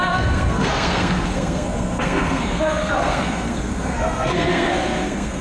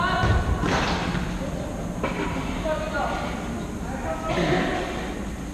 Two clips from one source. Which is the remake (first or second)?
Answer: first